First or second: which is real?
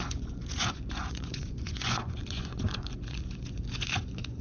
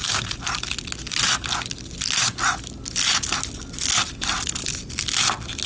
second